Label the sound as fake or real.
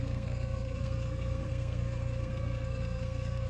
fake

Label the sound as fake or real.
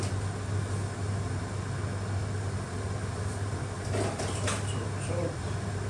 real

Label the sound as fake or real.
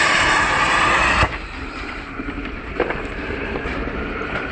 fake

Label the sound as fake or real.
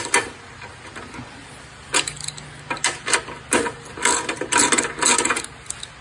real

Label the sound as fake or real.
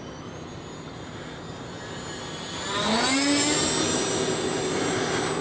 real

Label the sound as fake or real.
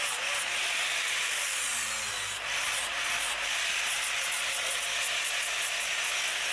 real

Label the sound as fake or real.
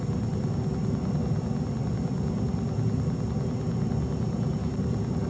real